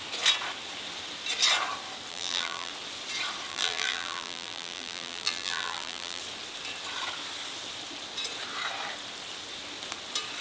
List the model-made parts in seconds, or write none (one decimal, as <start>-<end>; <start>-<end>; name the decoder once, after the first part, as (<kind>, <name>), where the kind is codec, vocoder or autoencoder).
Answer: 2.1-2.7 (vocoder, BigVGAN v2); 3.5-6.2